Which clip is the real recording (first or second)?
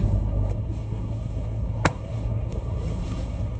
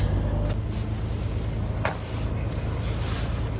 second